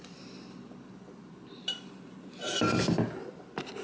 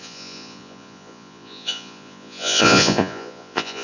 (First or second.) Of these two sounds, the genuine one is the first